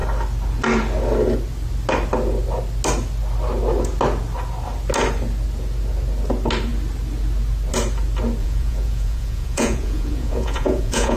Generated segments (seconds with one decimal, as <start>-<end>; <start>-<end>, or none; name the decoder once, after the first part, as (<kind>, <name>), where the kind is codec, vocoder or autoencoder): 8.4-11.2 (vocoder, Vocos)